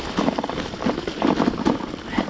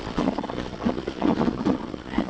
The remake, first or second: second